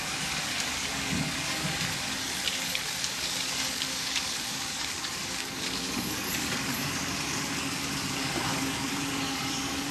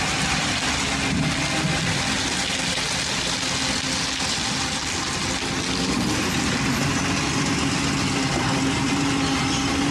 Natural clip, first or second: second